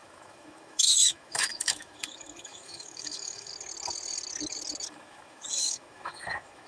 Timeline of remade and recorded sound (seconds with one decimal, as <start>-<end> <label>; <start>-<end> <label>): 0.0-3.5 remade; 3.5-4.9 recorded; 4.9-6.7 remade